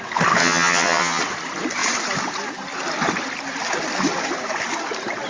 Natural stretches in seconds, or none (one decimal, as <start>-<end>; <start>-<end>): 0.0-0.4; 1.2-5.3